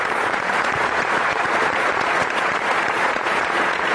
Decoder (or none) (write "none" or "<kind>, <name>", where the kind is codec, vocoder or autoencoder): vocoder, Vocos